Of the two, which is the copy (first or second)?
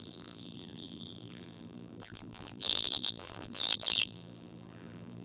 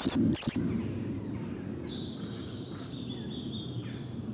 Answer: first